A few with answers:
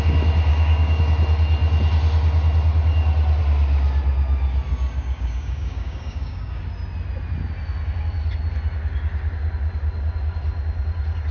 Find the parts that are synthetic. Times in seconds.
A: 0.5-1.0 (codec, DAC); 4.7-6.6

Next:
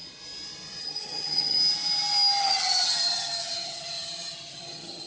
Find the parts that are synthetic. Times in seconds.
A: 0.8-1.6 (vocoder, HiFi-GAN); 2.4-5.1

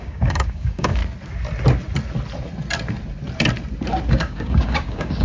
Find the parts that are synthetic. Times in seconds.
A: 0.0-1.0 (codec, DAC); 4.1-5.2

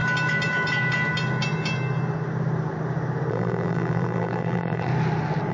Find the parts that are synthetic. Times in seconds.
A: 3.3-4.9 (vocoder, BigVGAN v2)

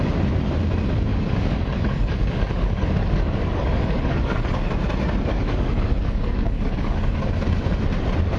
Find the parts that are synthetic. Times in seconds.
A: 1.1-4.7 (codec, DAC); 5.3-7.2